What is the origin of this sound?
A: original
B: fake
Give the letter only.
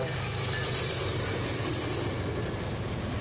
A